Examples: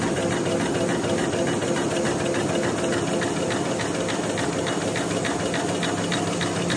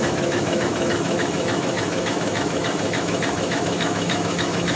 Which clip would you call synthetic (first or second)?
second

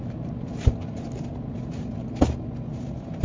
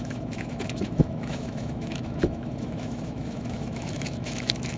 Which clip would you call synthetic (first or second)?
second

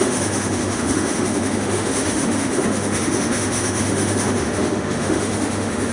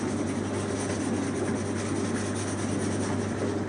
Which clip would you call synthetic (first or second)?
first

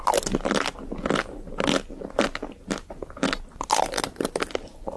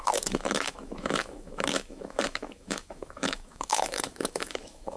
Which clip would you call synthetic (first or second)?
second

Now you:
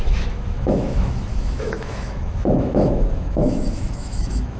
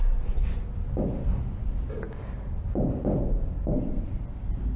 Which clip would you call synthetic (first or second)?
first